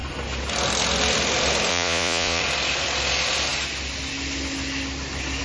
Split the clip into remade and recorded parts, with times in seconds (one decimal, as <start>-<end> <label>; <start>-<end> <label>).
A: 0.0-1.7 recorded; 1.7-2.4 remade; 2.4-5.4 recorded